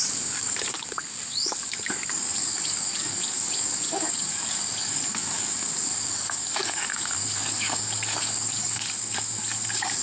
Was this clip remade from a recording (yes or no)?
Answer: yes